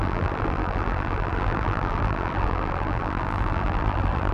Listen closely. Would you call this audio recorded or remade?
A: remade